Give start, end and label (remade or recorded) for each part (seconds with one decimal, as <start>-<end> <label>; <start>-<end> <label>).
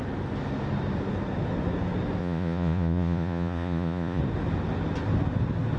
0.0-2.2 recorded; 2.2-4.2 remade; 4.2-5.8 recorded